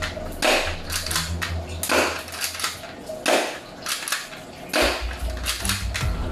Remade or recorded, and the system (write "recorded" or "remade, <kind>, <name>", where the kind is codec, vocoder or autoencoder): recorded